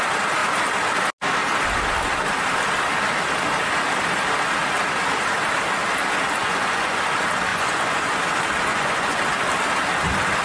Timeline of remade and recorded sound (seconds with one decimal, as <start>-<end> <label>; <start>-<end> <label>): 0.0-6.4 recorded; 6.4-7.0 remade; 7.0-7.5 recorded; 7.5-8.2 remade; 8.2-8.7 recorded; 8.7-9.2 remade; 9.2-10.4 recorded